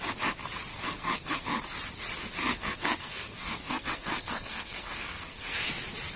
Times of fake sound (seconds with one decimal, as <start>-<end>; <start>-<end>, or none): 0.7-1.6; 2.4-5.7